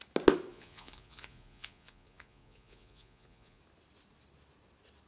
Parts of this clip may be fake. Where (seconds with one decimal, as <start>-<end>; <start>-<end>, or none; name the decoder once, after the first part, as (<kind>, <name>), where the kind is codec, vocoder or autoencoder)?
0.5-3.6 (vocoder, Vocos)